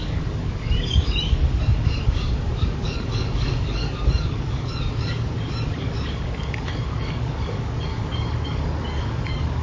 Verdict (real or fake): fake